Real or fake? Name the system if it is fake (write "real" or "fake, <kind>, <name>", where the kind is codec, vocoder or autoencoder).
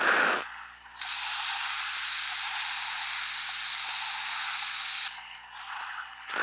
real